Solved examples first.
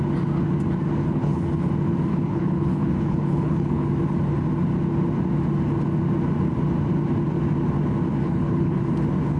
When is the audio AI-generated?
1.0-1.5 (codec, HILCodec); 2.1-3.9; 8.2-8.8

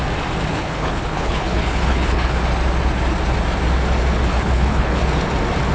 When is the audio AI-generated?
0.5-2.4 (codec, HILCodec); 4.3-5.0